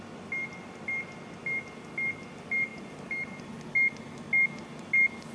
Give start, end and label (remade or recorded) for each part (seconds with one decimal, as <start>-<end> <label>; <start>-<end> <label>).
0.0-5.3 recorded